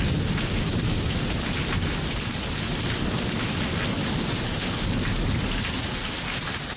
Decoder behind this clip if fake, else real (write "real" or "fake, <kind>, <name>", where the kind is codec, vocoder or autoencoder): real